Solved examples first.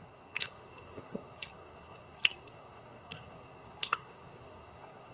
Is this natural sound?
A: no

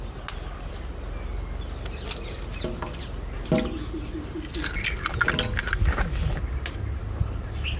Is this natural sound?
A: yes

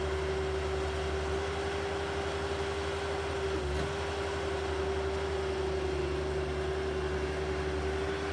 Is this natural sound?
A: yes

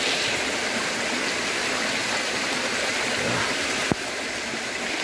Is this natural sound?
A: yes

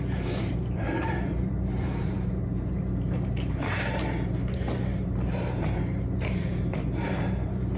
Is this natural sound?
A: no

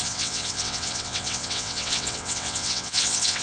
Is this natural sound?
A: no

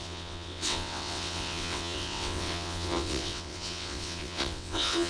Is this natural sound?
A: no